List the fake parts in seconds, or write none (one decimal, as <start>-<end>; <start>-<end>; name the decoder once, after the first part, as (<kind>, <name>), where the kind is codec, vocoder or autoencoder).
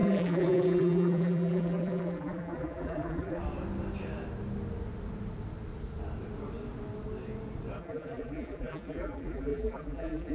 0.0-3.4 (vocoder, BigVGAN v2); 7.8-10.3